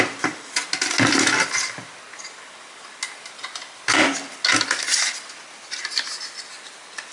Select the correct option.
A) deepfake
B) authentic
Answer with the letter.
B